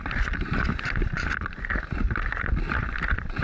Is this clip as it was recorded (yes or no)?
yes